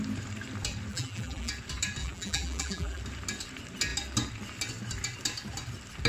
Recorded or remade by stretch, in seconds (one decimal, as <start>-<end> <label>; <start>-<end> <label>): 0.0-0.9 recorded; 0.9-1.5 remade; 1.5-2.0 recorded; 2.0-3.0 remade; 3.0-6.1 recorded